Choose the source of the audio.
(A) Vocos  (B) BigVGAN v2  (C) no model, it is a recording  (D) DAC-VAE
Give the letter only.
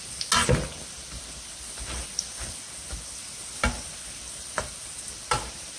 C